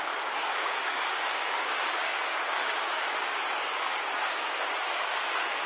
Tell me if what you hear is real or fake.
fake